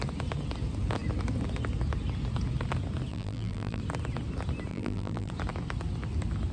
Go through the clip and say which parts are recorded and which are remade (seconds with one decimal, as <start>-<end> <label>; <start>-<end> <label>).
0.0-3.1 recorded; 3.1-3.8 remade; 3.8-4.7 recorded; 4.7-5.3 remade; 5.3-6.5 recorded